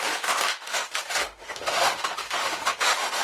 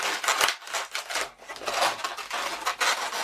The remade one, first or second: first